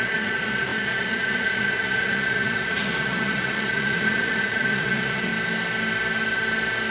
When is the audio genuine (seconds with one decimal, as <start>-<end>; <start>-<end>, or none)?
5.3-6.9

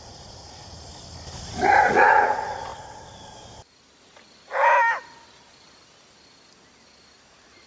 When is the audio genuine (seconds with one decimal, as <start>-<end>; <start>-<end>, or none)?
0.9-1.9; 2.7-7.3

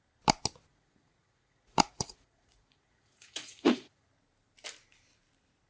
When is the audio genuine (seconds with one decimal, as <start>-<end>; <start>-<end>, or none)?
0.0-0.7; 4.1-5.7

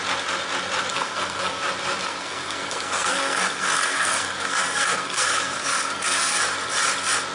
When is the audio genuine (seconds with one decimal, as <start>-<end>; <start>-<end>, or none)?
0.0-0.9; 1.6-2.0; 6.4-7.3